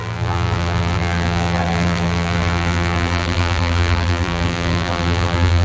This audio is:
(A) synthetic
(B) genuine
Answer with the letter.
A